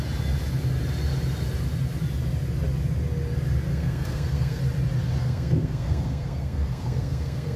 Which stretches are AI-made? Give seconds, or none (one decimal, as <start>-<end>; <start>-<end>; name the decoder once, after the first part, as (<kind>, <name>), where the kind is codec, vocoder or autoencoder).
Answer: 3.7-4.6 (codec, SNAC); 5.2-7.6